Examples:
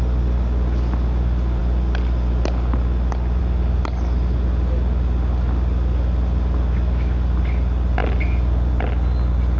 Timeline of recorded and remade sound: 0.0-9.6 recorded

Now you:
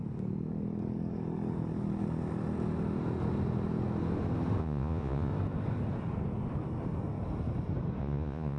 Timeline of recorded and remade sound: 0.0-4.6 recorded; 4.6-5.3 remade; 5.3-8.0 recorded; 8.0-8.6 remade